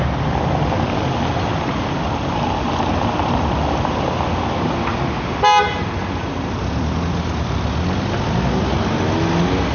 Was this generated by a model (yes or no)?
no